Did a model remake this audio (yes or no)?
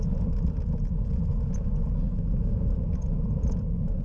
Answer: yes